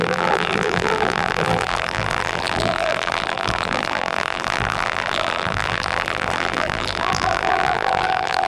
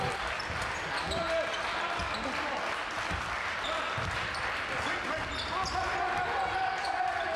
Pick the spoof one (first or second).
first